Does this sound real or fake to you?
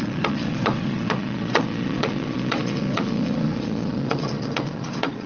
fake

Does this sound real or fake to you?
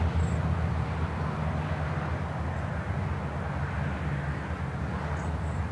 real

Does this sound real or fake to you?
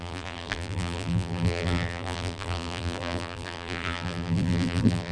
fake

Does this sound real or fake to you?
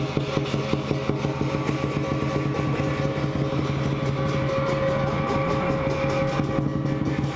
real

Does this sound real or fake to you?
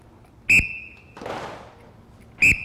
real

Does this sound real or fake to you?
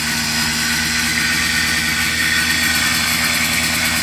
real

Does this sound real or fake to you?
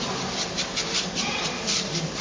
fake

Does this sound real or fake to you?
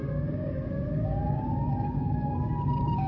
fake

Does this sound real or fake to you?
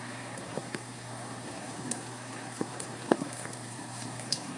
fake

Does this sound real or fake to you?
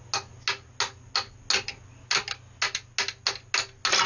real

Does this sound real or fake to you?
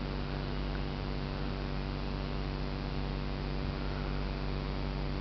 real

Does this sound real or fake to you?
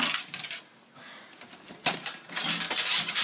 real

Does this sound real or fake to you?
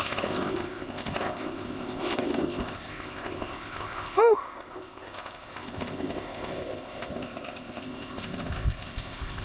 fake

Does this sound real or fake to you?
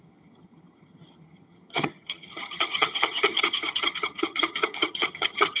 fake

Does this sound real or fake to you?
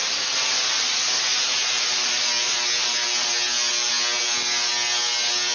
real